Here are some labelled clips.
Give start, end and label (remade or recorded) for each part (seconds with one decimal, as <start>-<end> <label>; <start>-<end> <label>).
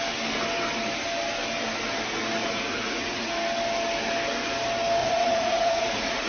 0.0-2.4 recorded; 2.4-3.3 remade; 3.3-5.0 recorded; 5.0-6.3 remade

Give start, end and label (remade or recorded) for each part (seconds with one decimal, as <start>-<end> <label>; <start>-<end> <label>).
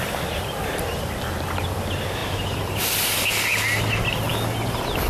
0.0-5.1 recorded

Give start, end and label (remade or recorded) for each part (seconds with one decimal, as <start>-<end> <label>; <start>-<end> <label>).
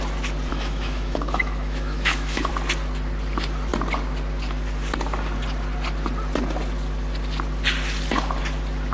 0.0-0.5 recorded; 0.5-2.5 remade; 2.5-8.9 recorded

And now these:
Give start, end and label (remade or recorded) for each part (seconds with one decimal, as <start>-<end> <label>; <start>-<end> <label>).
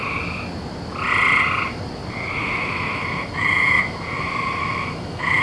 0.0-2.4 recorded; 2.4-5.4 remade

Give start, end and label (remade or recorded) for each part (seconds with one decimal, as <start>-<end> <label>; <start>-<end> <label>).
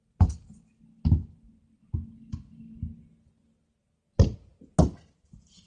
0.0-5.7 recorded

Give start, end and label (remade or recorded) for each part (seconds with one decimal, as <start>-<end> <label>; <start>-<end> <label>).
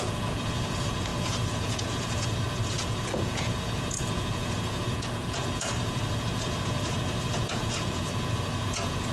0.0-9.1 remade